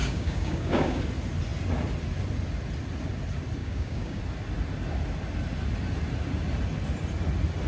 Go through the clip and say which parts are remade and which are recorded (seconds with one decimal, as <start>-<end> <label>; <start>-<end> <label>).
0.0-1.0 remade; 1.0-3.6 recorded; 3.6-4.2 remade; 4.2-7.7 recorded